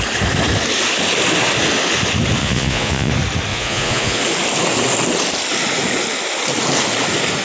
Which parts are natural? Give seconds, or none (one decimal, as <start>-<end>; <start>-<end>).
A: 0.0-2.4; 3.1-3.5; 4.2-7.4